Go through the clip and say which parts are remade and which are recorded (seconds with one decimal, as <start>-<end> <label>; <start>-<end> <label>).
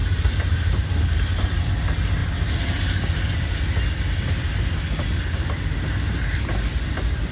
0.0-7.3 recorded